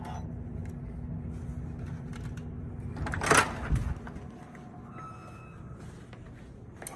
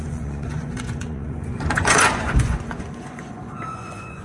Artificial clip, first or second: second